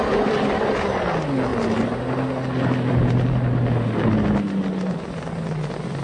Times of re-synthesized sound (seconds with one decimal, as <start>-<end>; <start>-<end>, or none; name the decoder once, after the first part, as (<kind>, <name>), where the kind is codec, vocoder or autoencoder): none